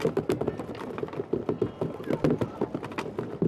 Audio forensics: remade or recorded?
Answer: recorded